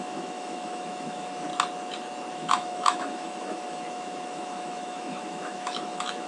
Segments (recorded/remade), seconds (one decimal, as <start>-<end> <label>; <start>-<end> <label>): 0.0-1.5 remade; 1.5-2.3 recorded; 2.3-6.3 remade